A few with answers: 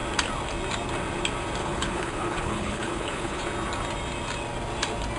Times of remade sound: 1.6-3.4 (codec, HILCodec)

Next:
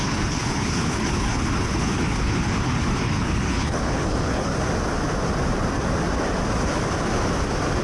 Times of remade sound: 0.0-4.5 (codec, HILCodec)

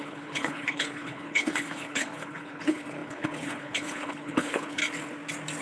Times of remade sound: 0.0-4.8 (codec, HILCodec)

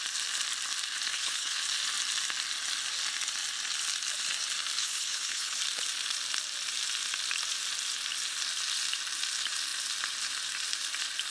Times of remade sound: 1.1-1.6 (codec, HILCodec); 4.8-5.6

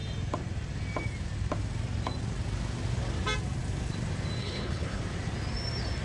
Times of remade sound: 4.4-5.0 (codec, HILCodec)

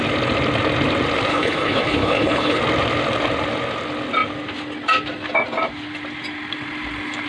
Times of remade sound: 1.3-2.6 (codec, HILCodec)

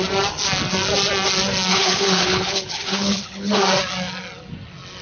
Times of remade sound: 1.7-3.6 (codec, HILCodec)

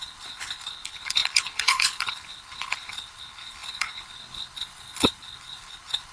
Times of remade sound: 0.0-6.1 (codec, HILCodec)